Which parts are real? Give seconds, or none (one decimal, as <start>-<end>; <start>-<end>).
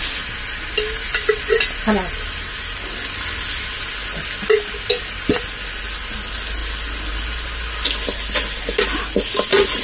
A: 0.0-9.8